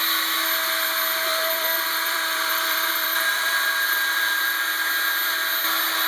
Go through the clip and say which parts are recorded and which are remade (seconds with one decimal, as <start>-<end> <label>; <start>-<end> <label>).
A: 0.0-1.3 recorded; 1.3-4.6 remade; 4.6-6.1 recorded